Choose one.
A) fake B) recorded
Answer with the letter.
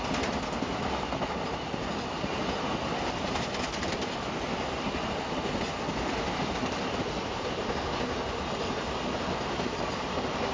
B